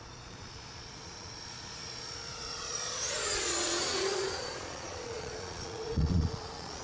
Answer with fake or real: fake